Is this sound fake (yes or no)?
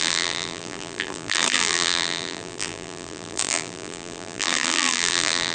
yes